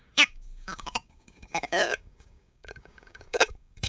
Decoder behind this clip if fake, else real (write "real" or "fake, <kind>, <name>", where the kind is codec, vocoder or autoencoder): fake, codec, DAC